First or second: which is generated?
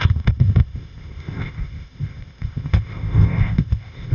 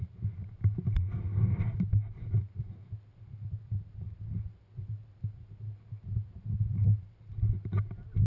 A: first